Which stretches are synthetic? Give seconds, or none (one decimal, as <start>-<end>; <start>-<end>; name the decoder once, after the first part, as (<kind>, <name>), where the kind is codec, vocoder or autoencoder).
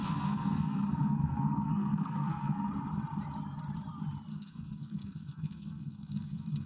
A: 0.0-2.7 (codec, SNAC); 4.3-6.7